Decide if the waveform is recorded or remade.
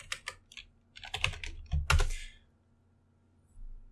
recorded